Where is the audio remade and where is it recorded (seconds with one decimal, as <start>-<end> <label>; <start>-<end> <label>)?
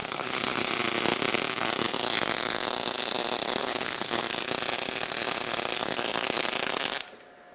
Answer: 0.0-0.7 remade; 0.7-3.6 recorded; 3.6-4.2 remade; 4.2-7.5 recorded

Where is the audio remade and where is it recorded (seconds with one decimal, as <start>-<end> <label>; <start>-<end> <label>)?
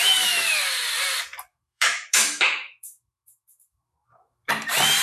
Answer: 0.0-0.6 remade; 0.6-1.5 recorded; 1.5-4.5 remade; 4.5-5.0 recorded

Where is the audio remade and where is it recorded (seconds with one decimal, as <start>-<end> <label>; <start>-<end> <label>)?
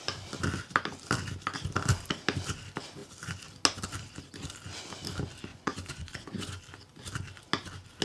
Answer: 0.0-5.5 recorded; 5.5-6.6 remade; 6.6-8.0 recorded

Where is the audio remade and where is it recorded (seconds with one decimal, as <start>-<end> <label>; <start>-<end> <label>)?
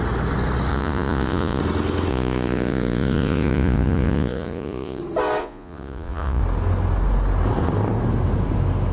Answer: 0.0-0.7 recorded; 0.7-1.6 remade; 1.6-2.1 recorded; 2.1-5.0 remade; 5.0-5.4 recorded; 5.4-6.4 remade; 6.4-8.9 recorded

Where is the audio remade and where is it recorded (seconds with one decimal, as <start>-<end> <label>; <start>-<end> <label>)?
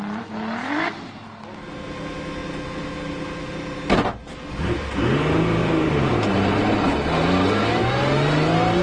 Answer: 0.0-5.6 recorded; 5.6-6.3 remade; 6.3-8.8 recorded